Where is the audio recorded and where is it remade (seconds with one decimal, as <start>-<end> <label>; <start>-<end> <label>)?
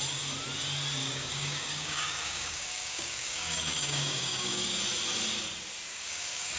0.0-1.0 recorded; 1.0-4.8 remade; 4.8-5.9 recorded; 5.9-6.6 remade